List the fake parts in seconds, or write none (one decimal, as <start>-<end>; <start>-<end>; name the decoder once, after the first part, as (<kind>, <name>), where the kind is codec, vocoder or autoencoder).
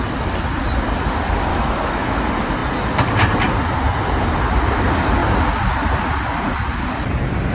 1.5-2.2 (autoencoder, DAC-VAE)